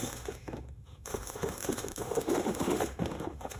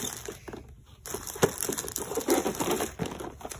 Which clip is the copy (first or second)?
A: first